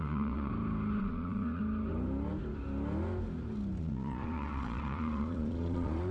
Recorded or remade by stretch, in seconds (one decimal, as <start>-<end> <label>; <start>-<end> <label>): 0.0-0.5 remade; 0.5-1.0 recorded; 1.0-1.6 remade; 1.6-3.8 recorded; 3.8-6.1 remade